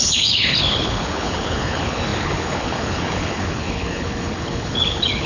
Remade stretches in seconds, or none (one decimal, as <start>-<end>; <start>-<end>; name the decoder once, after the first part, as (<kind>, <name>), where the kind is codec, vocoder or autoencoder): 0.0-5.3 (codec, HILCodec)